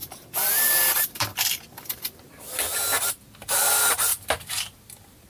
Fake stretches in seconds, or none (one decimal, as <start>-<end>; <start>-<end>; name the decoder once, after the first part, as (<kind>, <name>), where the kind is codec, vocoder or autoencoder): 0.0-2.4 (vocoder, BigVGAN v2); 4.1-5.3